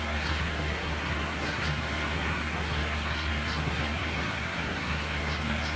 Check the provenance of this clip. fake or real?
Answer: fake